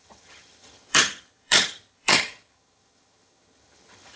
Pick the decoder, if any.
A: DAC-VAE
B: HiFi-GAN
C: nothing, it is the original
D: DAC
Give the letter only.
B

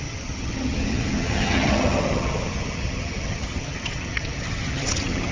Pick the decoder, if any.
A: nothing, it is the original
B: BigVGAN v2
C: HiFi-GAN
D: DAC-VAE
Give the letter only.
C